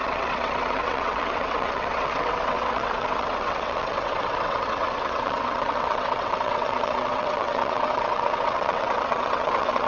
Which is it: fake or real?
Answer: fake